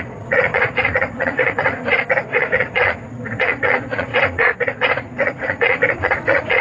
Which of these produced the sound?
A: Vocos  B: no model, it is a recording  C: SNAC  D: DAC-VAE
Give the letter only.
A